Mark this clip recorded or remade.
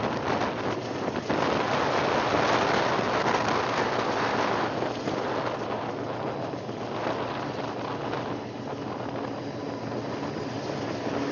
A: recorded